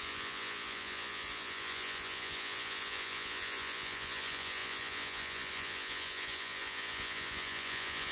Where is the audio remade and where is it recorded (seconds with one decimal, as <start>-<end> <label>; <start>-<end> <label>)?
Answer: 0.0-8.1 remade